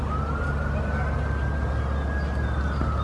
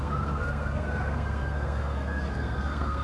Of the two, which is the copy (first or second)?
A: second